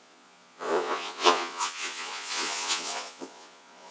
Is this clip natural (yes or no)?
no